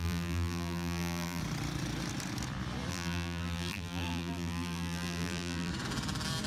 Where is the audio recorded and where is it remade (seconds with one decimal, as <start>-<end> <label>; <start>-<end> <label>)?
0.0-1.4 remade; 1.4-2.9 recorded; 2.9-5.7 remade; 5.7-6.5 recorded